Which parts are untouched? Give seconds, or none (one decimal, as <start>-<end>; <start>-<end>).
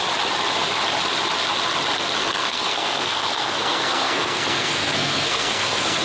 0.0-2.2